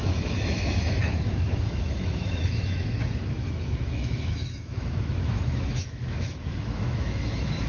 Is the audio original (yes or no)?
no